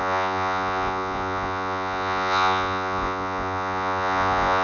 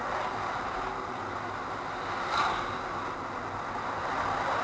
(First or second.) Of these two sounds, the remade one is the first